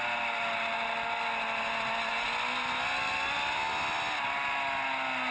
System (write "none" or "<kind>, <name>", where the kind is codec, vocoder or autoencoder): none